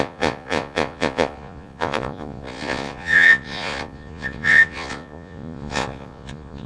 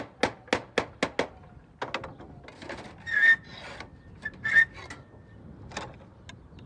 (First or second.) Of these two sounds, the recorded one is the second